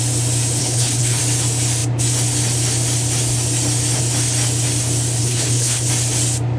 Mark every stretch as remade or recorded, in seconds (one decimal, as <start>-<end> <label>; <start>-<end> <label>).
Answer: 0.0-0.6 recorded; 0.6-1.2 remade; 1.2-5.2 recorded; 5.2-5.9 remade; 5.9-6.6 recorded

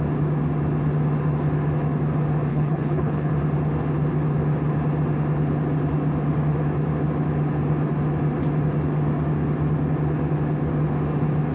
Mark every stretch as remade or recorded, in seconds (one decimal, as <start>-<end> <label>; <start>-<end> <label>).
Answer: 0.0-2.5 recorded; 2.5-3.3 remade; 3.3-11.5 recorded

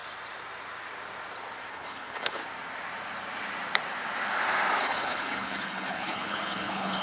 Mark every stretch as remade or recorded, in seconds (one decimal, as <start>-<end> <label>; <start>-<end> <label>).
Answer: 0.0-1.7 recorded; 1.7-2.4 remade; 2.4-4.8 recorded; 4.8-7.0 remade